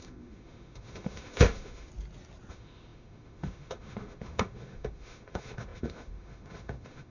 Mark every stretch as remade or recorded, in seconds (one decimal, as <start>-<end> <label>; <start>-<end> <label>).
0.0-1.9 remade; 1.9-2.5 recorded; 2.5-7.1 remade